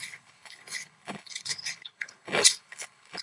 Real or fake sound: fake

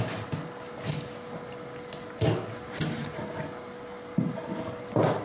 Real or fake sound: real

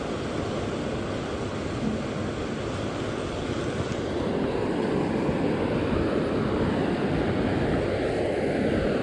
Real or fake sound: real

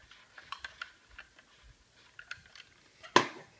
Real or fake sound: real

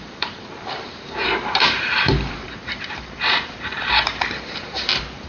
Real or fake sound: fake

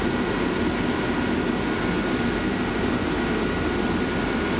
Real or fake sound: real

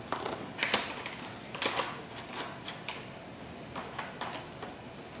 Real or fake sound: real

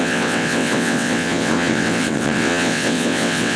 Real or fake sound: fake